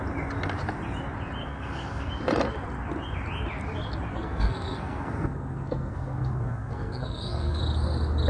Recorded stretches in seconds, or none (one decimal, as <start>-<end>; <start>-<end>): 0.0-1.4; 2.1-4.1; 7.6-8.3